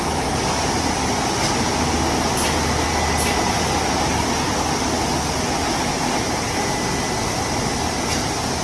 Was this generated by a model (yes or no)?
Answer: no